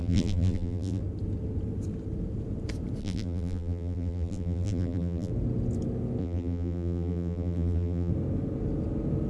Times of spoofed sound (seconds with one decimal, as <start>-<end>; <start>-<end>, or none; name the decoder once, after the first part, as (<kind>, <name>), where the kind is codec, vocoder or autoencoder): 0.0-1.0 (vocoder, BigVGAN v2); 3.0-5.3; 6.2-8.1